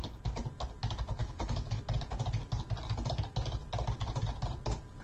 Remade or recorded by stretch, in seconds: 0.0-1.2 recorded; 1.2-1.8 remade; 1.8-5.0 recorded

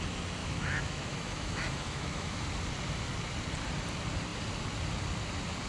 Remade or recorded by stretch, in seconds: 0.0-0.4 recorded; 0.4-2.4 remade; 2.4-5.7 recorded

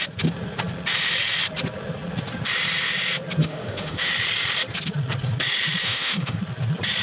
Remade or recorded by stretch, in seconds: 0.0-3.4 recorded; 3.4-4.1 remade; 4.1-5.8 recorded; 5.8-6.4 remade; 6.4-7.0 recorded

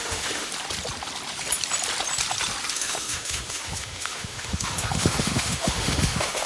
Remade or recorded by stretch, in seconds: 0.0-0.5 remade; 0.5-2.7 recorded; 2.7-6.5 remade